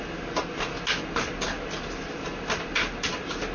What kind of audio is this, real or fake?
real